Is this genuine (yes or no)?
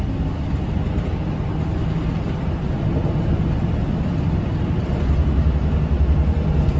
yes